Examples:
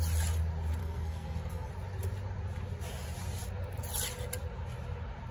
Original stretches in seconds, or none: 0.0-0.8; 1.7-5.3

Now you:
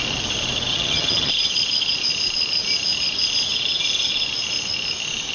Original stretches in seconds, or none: 0.0-0.7; 1.3-5.3

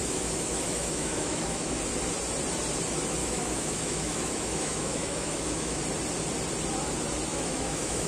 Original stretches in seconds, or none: 1.8-3.2; 5.8-7.3

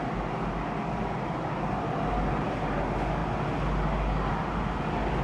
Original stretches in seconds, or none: 0.0-5.2

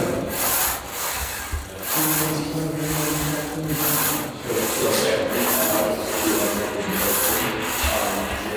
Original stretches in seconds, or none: 0.0-0.9; 1.4-8.6

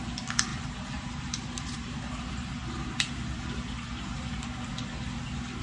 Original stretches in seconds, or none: 0.0-0.5; 2.1-5.6